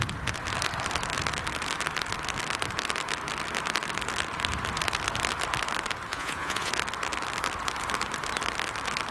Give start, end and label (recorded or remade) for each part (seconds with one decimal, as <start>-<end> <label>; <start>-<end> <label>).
0.0-6.1 recorded; 6.1-6.7 remade; 6.7-9.1 recorded